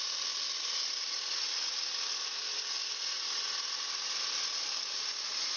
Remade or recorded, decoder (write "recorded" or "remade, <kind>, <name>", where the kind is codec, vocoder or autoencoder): recorded